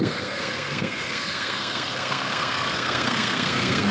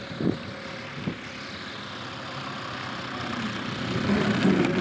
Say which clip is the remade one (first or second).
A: first